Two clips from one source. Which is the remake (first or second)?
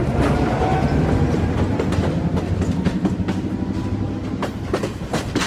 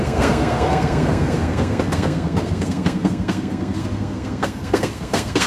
second